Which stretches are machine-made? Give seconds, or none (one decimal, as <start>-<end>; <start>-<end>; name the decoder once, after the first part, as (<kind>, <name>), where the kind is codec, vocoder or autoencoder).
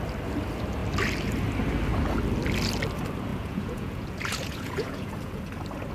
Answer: 3.3-5.4 (vocoder, Vocos)